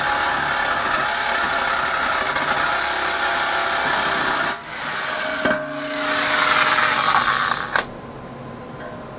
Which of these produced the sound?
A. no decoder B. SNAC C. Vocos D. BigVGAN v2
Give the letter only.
A